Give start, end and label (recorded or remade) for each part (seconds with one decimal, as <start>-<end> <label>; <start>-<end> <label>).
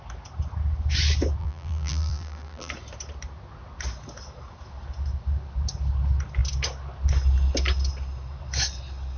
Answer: 0.0-1.4 recorded; 1.4-2.7 remade; 2.7-9.2 recorded